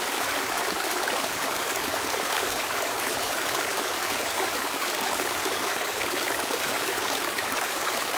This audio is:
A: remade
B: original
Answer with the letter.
A